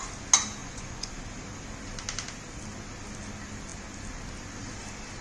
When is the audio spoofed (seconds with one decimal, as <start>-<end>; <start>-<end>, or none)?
0.6-1.1